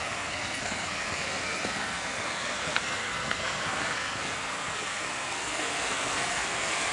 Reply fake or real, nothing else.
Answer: fake